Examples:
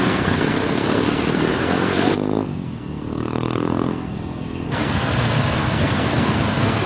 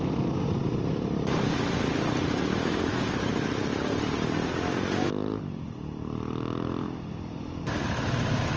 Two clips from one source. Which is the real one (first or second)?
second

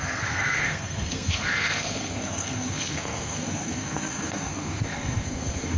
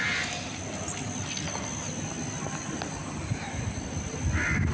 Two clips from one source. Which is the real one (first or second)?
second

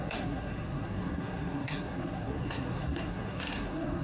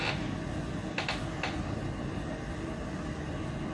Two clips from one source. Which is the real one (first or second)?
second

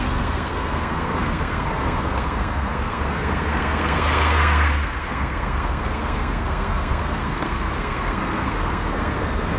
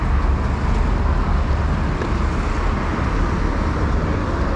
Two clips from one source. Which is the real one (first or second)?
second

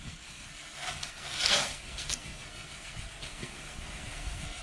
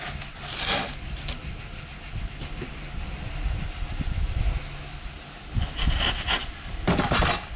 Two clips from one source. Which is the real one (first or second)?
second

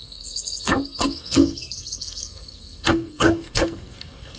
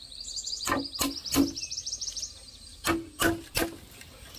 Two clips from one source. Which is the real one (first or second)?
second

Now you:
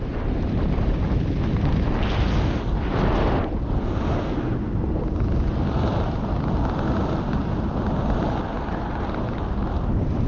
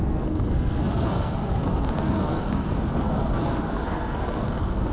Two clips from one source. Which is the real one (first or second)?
first